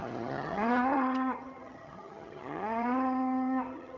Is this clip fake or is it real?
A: fake